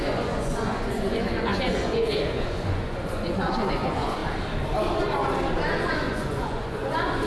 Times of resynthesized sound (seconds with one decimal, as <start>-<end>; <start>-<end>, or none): 0.0-4.2; 5.8-7.3

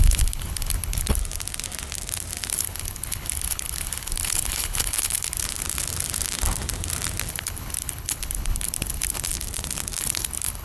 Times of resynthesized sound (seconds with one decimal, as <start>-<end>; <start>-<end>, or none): 0.0-1.2; 2.5-5.4; 7.3-9.3; 10.0-10.6

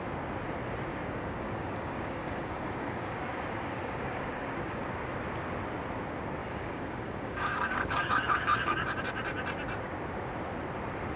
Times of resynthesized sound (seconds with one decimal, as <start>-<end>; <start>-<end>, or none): 0.9-4.8; 6.4-9.0

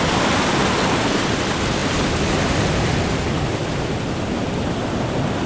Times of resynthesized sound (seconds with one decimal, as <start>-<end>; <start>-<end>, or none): none